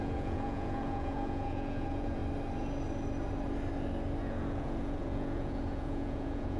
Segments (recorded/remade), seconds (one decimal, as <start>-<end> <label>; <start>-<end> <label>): 0.0-2.2 remade; 2.2-4.2 recorded; 4.2-6.6 remade